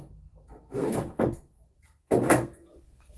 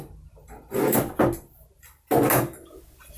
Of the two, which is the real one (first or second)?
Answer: second